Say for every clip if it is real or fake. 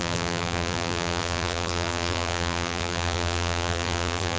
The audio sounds fake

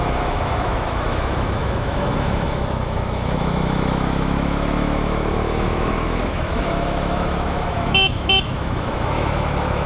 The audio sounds fake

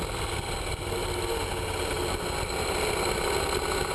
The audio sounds real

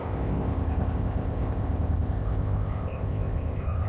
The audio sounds fake